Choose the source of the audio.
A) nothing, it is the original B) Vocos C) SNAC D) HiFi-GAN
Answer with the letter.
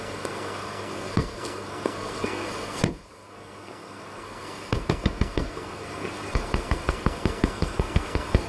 C